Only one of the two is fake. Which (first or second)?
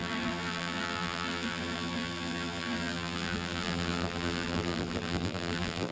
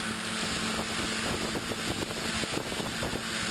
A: first